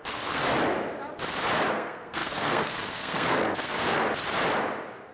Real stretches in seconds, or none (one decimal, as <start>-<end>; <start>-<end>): 0.4-1.7; 4.0-5.1

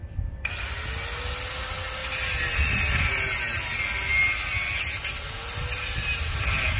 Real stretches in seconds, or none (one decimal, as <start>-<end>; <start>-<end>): 0.0-6.8

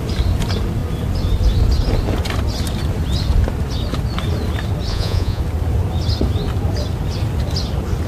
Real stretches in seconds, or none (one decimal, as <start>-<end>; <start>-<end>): 0.0-4.9; 5.4-8.1

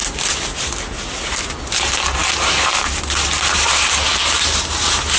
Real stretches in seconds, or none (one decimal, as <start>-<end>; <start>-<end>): 0.0-5.2